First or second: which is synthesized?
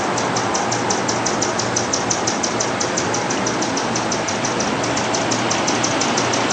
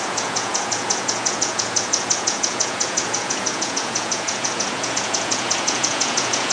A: second